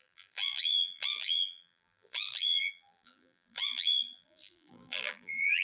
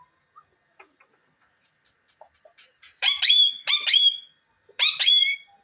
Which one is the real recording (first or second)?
second